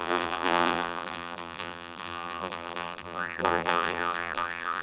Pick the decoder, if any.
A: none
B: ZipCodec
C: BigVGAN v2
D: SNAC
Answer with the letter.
C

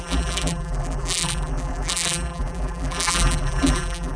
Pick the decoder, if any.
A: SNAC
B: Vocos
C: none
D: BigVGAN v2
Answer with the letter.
D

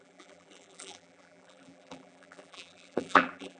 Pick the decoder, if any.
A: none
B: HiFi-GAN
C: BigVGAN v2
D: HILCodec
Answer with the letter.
C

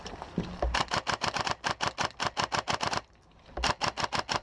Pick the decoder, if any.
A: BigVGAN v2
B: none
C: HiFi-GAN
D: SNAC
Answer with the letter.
B